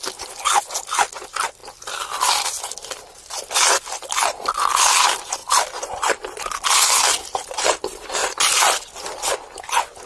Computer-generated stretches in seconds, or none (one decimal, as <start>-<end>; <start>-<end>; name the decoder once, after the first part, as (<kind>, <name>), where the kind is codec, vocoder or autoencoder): 8.2-9.6 (vocoder, BigVGAN v2)